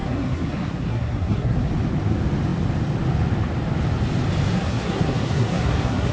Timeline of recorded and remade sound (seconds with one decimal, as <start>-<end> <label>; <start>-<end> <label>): 0.0-1.7 remade; 1.7-4.5 recorded; 4.5-6.1 remade